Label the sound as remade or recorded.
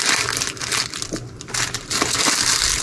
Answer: recorded